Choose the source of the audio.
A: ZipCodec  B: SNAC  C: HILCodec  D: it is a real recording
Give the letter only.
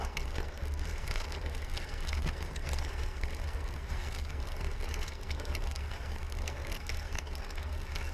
B